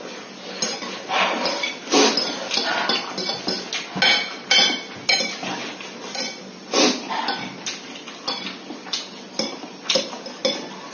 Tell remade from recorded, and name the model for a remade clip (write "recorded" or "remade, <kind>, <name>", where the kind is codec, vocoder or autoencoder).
recorded